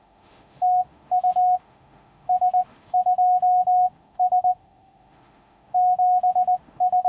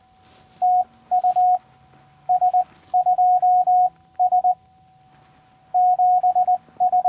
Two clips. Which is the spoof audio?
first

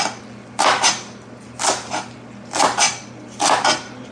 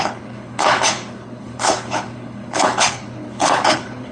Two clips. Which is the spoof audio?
second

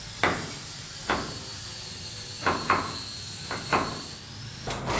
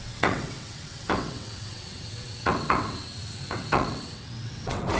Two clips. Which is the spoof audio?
second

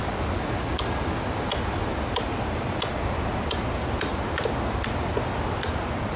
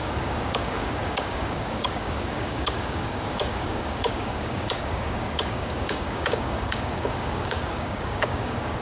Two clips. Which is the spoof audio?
second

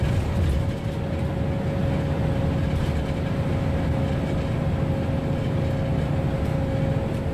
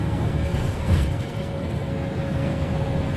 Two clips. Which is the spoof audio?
second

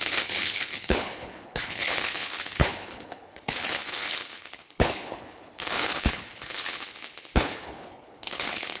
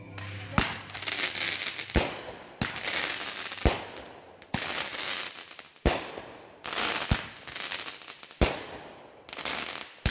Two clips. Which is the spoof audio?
first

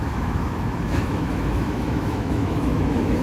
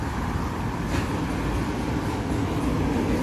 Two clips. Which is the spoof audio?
first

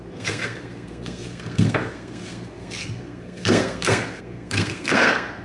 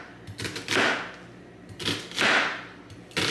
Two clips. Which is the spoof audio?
first